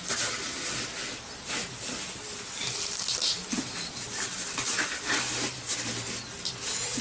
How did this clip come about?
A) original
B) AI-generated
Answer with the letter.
A